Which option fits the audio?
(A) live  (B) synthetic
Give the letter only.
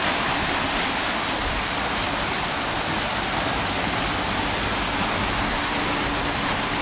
A